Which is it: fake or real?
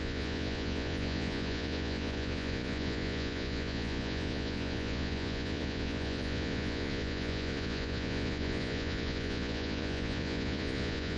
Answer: fake